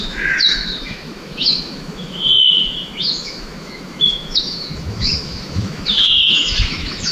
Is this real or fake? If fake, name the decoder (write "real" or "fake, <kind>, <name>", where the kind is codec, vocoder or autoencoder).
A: fake, autoencoder, DAC-VAE